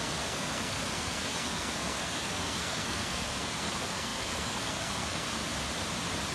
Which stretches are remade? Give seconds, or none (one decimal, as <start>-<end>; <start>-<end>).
0.0-5.4